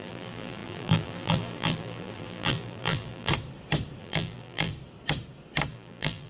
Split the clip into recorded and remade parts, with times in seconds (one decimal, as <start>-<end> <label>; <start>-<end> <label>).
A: 0.0-3.3 remade; 3.3-4.0 recorded; 4.0-4.7 remade; 4.7-5.7 recorded; 5.7-6.3 remade